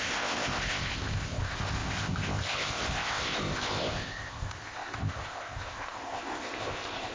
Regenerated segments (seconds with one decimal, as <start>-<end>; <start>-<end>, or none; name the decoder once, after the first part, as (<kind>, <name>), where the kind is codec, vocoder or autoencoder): 0.0-7.1 (codec, ZipCodec)